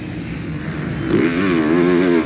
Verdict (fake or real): real